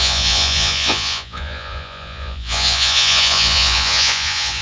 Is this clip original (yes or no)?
no